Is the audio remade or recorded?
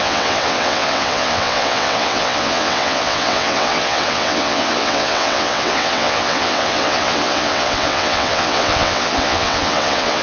remade